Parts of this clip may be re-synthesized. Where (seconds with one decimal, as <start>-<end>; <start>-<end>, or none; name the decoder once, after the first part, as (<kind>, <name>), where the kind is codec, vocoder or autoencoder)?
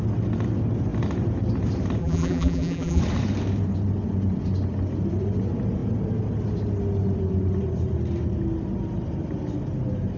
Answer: 2.0-3.0 (vocoder, BigVGAN v2)